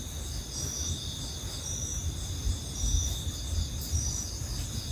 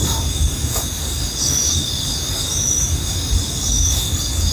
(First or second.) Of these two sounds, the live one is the first